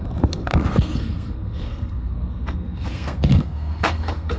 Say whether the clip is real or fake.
fake